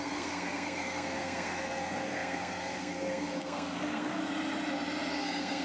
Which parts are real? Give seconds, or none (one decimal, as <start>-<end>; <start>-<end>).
4.2-5.1